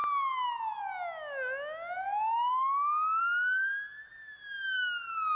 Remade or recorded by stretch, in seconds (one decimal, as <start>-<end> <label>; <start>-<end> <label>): 0.0-5.4 recorded